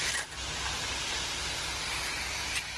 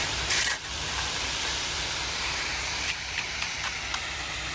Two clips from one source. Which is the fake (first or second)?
second